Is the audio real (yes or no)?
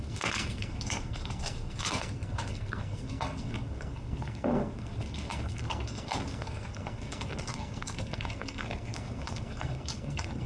no